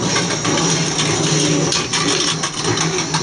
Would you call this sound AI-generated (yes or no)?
no